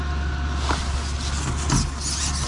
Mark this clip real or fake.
real